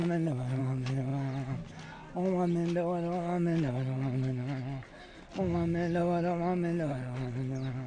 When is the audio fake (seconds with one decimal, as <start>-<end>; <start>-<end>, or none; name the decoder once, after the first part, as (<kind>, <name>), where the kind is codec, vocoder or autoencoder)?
none